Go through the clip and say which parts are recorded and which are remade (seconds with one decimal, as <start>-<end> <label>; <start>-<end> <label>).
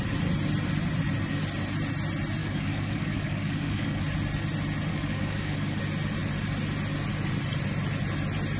0.0-2.4 recorded; 2.4-4.0 remade; 4.0-4.9 recorded; 4.9-5.8 remade; 5.8-8.6 recorded